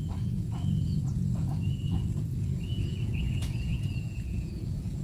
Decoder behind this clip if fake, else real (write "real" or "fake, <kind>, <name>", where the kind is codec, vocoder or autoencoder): fake, vocoder, Vocos